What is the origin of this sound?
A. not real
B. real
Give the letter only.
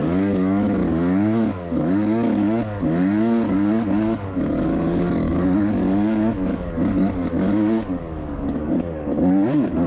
A